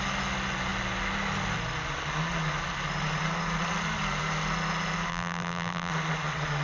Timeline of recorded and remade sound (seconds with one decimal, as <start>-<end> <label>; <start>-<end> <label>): 0.0-5.1 recorded; 5.1-5.9 remade; 5.9-6.6 recorded